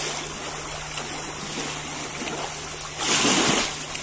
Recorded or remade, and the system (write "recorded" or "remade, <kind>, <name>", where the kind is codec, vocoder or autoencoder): recorded